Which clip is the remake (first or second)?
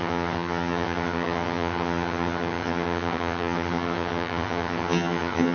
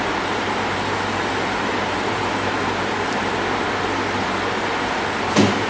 first